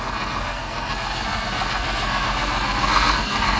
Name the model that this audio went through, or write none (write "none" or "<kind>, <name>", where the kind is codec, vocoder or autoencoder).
codec, SNAC